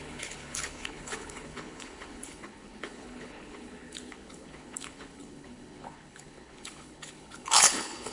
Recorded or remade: remade